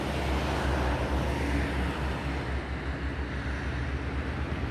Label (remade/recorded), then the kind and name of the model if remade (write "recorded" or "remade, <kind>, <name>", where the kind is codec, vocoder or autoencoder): recorded